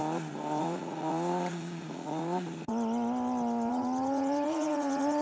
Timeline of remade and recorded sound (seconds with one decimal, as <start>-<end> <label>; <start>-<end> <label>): 0.0-0.6 recorded; 0.6-2.7 remade; 2.7-3.7 recorded; 3.7-5.2 remade